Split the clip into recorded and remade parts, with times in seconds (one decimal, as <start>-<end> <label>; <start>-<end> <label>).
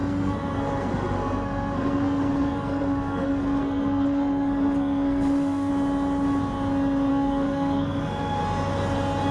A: 0.0-5.7 remade; 5.7-7.1 recorded; 7.1-8.4 remade; 8.4-9.3 recorded